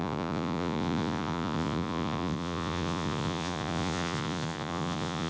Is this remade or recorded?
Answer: remade